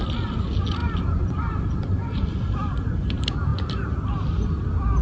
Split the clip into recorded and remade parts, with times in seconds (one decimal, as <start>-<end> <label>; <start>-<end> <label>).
0.0-5.0 recorded